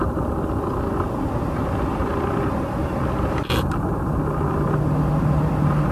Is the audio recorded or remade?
recorded